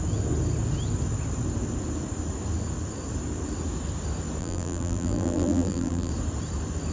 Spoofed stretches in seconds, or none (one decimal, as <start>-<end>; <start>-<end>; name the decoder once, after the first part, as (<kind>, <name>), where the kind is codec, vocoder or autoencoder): 4.4-6.1 (vocoder, BigVGAN v2)